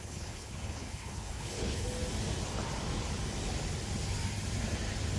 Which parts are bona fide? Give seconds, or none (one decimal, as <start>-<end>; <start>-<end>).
1.8-5.2